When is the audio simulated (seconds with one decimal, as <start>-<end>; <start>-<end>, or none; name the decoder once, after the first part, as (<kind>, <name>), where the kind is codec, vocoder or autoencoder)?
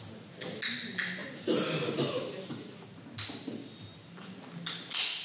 none